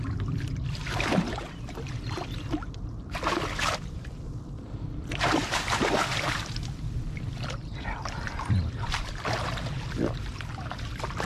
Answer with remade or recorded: remade